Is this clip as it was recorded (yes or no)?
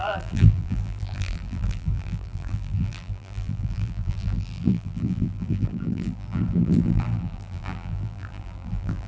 no